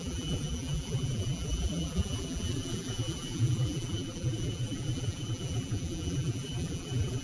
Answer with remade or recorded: remade